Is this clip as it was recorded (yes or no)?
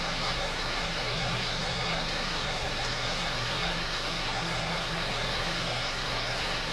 no